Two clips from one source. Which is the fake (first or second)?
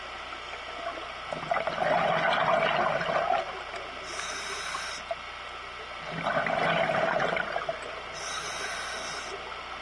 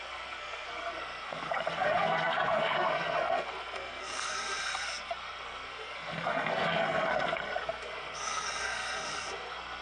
second